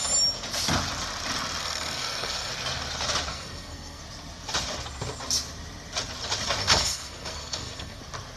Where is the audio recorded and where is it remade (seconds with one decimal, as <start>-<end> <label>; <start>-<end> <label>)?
0.0-1.6 recorded; 1.6-2.5 remade; 2.5-3.3 recorded; 3.3-4.0 remade; 4.0-6.6 recorded; 6.6-8.0 remade; 8.0-8.4 recorded